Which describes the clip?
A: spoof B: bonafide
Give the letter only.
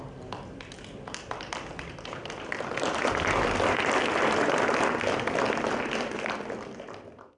B